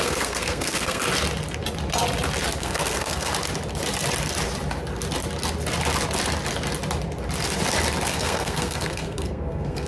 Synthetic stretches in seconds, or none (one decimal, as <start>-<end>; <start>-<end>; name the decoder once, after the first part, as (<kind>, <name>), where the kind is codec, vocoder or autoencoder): 0.0-1.0 (codec, SNAC); 2.6-3.3; 8.1-9.9